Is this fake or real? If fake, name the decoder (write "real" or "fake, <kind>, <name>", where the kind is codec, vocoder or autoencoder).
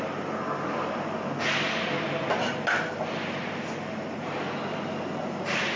real